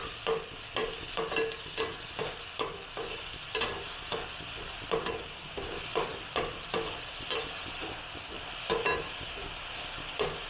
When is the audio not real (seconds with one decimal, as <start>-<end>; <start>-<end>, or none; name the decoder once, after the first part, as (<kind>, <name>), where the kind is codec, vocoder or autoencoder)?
6.1-9.4 (vocoder, BigVGAN v2)